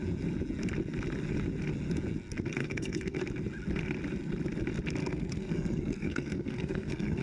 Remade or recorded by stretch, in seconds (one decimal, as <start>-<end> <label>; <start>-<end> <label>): 0.0-2.6 recorded; 2.6-3.2 remade; 3.2-5.0 recorded; 5.0-7.2 remade